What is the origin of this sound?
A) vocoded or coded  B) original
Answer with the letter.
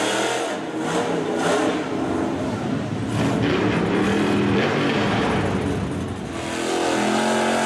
B